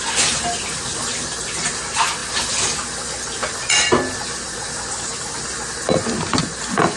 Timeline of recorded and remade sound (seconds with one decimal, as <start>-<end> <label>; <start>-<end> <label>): 0.0-7.0 recorded